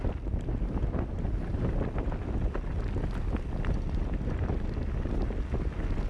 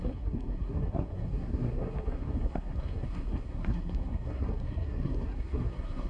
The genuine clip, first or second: first